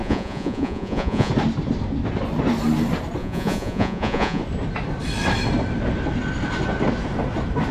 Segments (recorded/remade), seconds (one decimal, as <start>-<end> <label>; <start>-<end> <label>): 0.0-1.3 remade; 1.3-3.2 recorded; 3.2-4.4 remade; 4.4-7.7 recorded